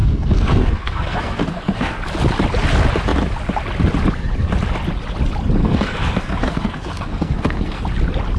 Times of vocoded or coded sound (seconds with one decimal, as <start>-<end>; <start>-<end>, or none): 0.0-2.0; 5.6-7.8